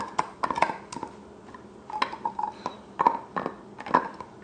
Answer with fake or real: real